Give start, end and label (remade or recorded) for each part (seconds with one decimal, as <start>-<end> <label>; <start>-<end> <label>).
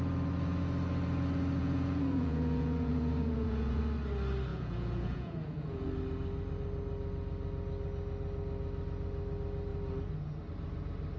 0.0-1.6 recorded; 1.6-3.8 remade; 3.8-4.5 recorded; 4.5-5.9 remade; 5.9-11.2 recorded